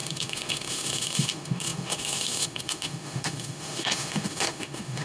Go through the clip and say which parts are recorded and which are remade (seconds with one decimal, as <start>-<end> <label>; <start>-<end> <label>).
0.0-5.0 remade